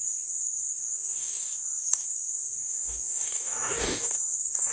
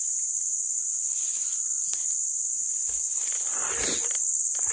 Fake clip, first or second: first